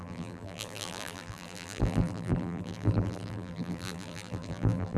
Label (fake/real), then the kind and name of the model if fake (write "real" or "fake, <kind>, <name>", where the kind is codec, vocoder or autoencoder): fake, vocoder, BigVGAN v2